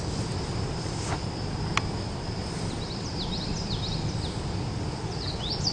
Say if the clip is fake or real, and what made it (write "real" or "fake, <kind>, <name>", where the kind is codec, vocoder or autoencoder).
real